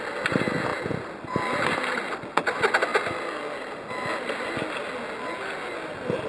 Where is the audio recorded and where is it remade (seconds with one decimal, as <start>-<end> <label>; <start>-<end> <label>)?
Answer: 0.0-6.3 recorded